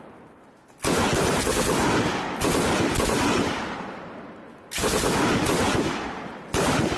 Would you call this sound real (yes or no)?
yes